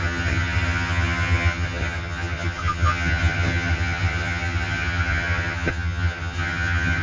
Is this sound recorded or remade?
remade